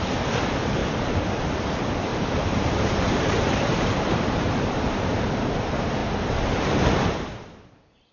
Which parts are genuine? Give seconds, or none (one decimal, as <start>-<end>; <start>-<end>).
0.0-0.8; 1.7-2.1; 5.3-8.1